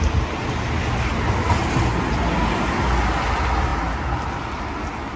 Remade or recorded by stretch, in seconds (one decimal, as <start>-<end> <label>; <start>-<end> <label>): 0.0-5.2 recorded